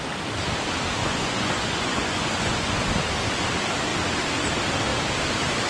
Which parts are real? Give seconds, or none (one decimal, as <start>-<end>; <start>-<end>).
0.0-1.0; 2.8-5.7